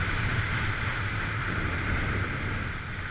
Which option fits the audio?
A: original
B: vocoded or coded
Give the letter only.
B